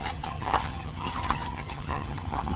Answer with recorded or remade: remade